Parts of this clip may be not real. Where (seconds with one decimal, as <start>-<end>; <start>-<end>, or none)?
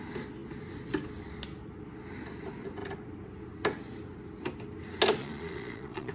5.2-6.1